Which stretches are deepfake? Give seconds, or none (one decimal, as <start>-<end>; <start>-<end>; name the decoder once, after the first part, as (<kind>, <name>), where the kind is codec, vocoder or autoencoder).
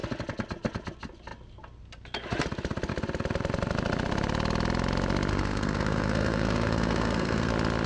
5.3-7.5 (codec, SNAC)